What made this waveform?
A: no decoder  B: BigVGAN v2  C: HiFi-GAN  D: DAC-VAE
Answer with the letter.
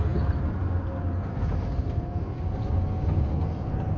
A